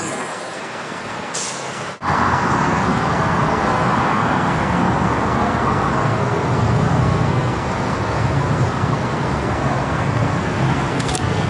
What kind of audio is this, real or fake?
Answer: fake